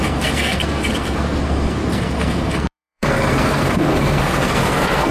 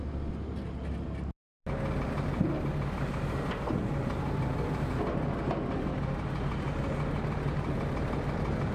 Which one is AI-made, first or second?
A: first